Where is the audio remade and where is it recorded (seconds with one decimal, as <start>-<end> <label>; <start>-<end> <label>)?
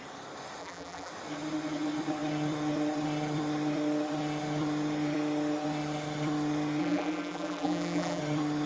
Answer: 0.0-0.6 recorded; 0.6-1.1 remade; 1.1-6.8 recorded; 6.8-8.2 remade; 8.2-8.7 recorded